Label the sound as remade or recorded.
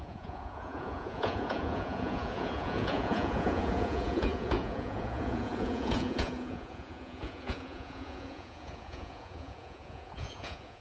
remade